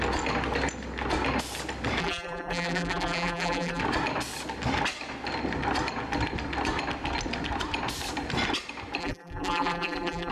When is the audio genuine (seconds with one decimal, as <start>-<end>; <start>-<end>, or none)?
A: 0.0-2.0; 3.8-9.0